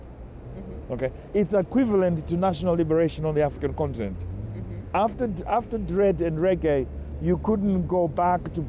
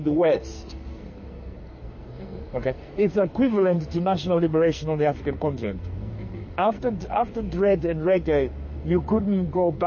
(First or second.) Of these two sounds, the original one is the first